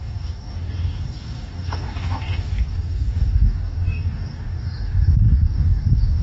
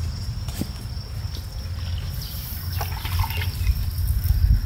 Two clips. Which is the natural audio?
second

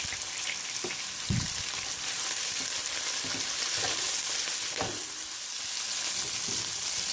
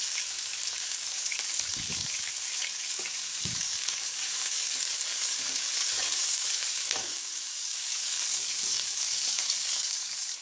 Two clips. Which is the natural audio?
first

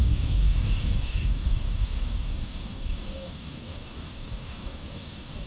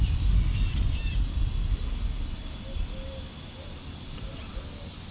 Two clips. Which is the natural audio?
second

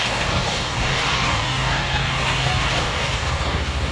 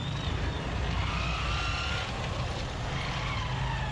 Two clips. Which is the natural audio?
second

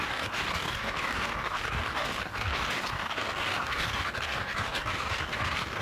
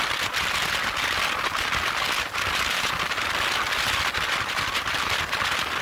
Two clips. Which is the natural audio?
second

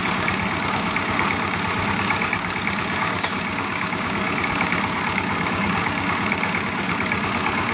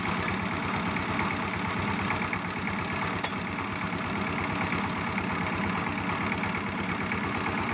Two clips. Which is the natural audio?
second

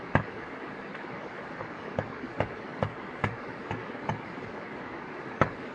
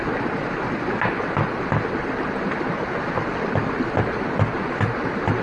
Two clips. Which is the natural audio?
second